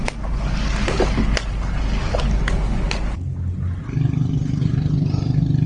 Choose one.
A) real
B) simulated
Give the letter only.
A